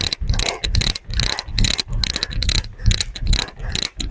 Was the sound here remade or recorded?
recorded